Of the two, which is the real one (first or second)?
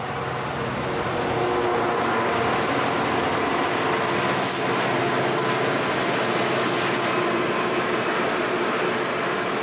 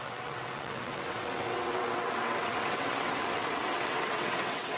first